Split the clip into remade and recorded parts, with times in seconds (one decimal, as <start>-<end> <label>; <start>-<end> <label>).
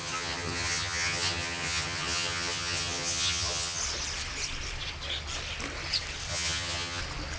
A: 0.0-3.8 remade; 3.8-6.3 recorded; 6.3-7.0 remade; 7.0-7.4 recorded